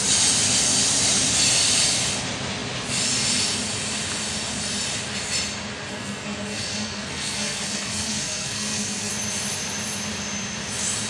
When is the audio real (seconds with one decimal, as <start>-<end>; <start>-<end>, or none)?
0.0-5.9; 9.1-11.1